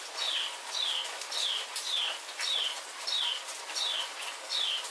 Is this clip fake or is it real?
real